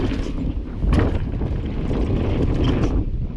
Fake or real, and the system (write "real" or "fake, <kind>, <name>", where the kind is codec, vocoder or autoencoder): real